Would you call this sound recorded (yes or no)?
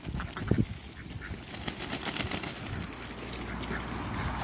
yes